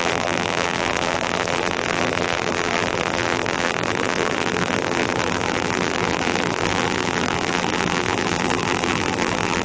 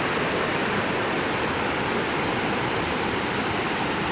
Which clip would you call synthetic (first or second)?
first